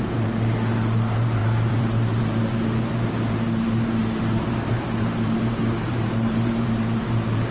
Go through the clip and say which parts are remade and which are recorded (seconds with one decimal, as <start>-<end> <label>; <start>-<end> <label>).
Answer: 0.0-7.5 remade